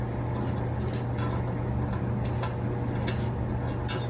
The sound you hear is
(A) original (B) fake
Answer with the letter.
A